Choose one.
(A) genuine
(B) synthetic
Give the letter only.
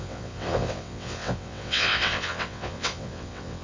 B